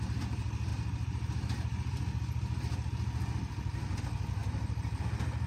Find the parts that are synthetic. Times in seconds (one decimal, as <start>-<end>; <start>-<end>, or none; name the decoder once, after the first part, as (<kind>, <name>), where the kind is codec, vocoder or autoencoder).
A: 4.4-5.0 (vocoder, BigVGAN v2)